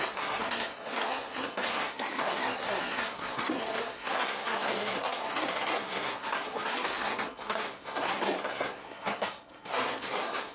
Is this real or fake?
fake